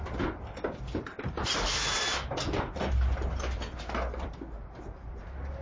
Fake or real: real